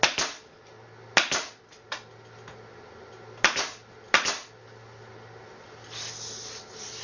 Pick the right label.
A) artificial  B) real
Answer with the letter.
B